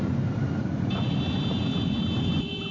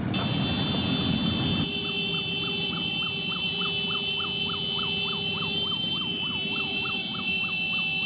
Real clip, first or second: second